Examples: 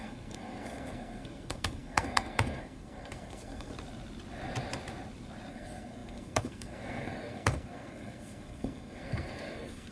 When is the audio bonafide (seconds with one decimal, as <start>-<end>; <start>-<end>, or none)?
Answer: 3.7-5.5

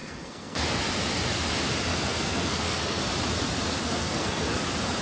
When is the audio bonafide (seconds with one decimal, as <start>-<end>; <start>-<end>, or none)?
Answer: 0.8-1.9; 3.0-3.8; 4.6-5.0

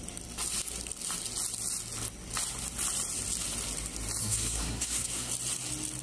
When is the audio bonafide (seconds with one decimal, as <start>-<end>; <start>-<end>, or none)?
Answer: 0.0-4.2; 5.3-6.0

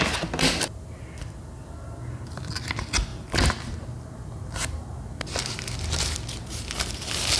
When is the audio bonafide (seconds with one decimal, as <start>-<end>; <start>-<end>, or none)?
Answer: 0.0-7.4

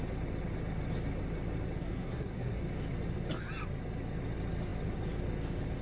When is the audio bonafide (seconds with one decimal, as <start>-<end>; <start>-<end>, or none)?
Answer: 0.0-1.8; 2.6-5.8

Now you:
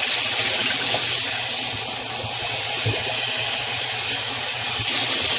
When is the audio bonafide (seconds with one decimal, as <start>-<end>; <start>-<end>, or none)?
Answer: 0.0-5.4